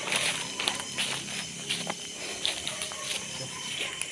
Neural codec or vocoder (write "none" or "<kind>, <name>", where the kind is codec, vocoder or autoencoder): vocoder, BigVGAN v2